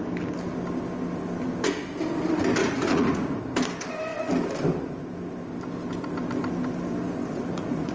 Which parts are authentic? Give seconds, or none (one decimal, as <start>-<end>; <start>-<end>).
0.0-2.6; 3.4-7.2